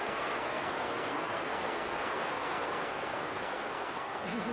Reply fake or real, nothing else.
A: fake